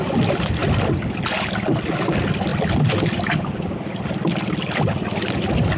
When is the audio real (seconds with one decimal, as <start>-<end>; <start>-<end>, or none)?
0.6-2.1